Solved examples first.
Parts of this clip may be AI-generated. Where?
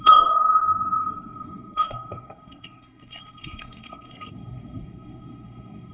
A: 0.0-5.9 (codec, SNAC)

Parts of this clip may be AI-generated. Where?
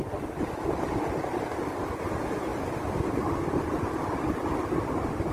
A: none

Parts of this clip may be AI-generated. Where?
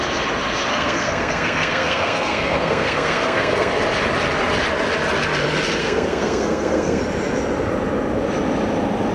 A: 0.7-3.7 (codec, SNAC); 5.8-7.0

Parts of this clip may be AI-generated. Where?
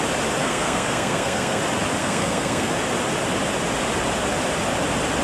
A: 0.4-1.6 (codec, SNAC); 2.0-2.7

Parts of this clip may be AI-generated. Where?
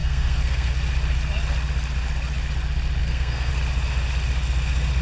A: 0.0-0.7 (codec, SNAC); 3.0-3.5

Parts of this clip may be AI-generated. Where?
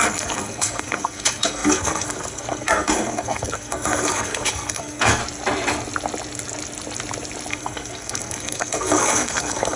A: 0.0-5.2 (codec, SNAC); 7.5-9.8